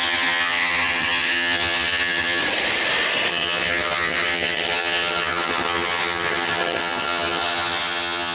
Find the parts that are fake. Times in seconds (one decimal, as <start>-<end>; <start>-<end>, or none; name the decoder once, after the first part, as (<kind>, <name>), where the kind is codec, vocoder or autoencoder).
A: 0.0-2.4 (vocoder, HiFi-GAN); 3.3-8.3